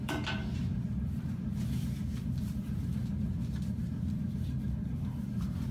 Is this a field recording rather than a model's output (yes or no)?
no